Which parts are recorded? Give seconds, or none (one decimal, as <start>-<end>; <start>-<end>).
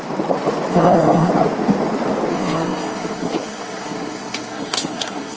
0.0-0.7; 1.3-2.3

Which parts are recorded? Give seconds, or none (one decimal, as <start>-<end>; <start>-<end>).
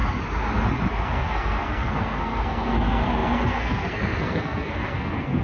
0.0-0.9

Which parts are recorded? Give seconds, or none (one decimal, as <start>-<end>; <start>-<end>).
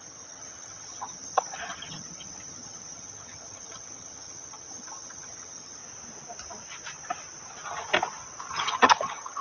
5.8-8.5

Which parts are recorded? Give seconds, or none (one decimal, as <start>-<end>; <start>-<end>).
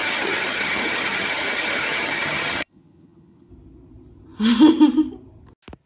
3.5-5.9